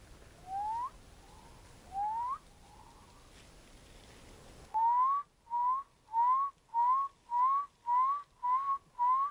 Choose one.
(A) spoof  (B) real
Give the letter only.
B